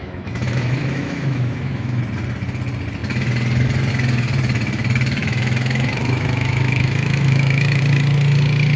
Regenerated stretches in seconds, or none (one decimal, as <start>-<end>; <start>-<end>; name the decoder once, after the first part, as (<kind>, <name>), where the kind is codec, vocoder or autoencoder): 0.0-2.0 (autoencoder, DAC-VAE); 5.2-7.8